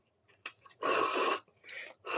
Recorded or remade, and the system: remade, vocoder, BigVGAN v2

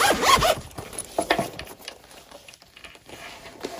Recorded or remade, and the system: remade, vocoder, BigVGAN v2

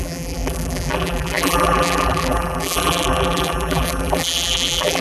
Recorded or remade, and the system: remade, vocoder, BigVGAN v2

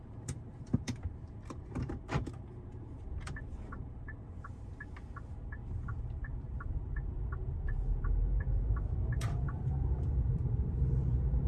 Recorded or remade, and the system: remade, vocoder, BigVGAN v2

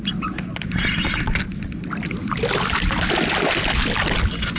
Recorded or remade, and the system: recorded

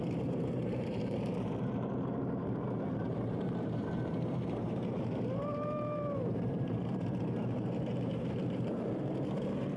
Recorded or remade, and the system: remade, vocoder, BigVGAN v2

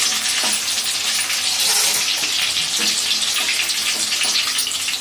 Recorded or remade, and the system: recorded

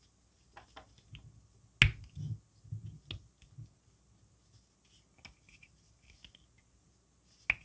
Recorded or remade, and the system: recorded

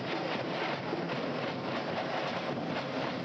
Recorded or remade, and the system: recorded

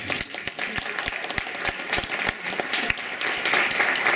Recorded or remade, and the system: recorded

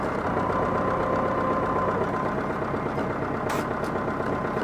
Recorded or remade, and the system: recorded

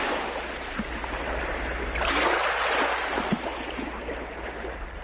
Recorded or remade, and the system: recorded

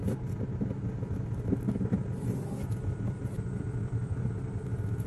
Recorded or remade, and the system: recorded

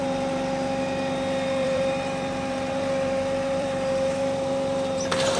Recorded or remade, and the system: remade, vocoder, BigVGAN v2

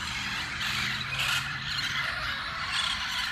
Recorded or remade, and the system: remade, vocoder, BigVGAN v2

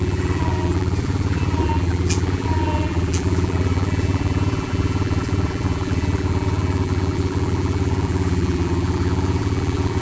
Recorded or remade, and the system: remade, vocoder, BigVGAN v2